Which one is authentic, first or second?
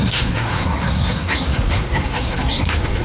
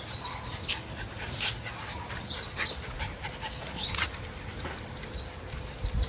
second